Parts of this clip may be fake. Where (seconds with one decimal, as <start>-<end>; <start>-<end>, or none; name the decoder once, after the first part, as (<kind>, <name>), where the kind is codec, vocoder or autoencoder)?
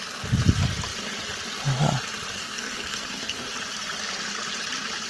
2.4-3.5 (codec, SNAC)